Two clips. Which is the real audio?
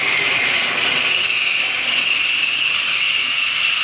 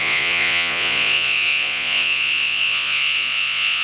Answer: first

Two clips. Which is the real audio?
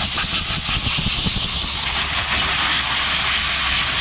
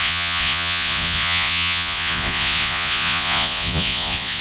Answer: first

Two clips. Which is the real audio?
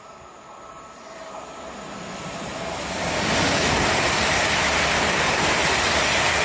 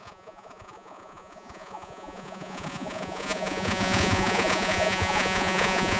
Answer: first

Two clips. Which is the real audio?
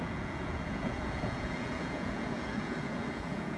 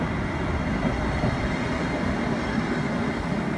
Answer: second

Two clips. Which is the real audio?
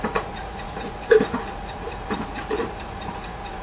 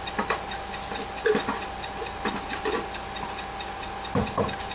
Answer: second